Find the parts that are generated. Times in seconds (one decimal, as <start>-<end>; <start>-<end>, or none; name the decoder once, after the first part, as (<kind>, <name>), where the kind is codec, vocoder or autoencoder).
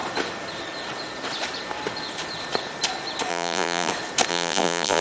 3.3-3.9 (vocoder, BigVGAN v2); 4.3-5.0